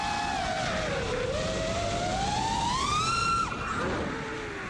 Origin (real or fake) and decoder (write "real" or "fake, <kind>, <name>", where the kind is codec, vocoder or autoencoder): real